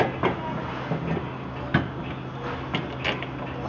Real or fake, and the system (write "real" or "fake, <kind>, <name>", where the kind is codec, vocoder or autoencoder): real